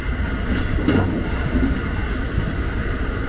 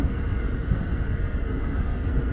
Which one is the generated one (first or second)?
second